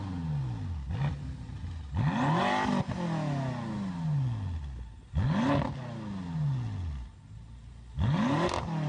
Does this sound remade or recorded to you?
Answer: recorded